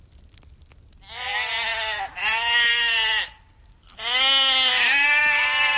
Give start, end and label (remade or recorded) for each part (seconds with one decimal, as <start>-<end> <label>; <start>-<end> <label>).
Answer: 0.0-5.8 recorded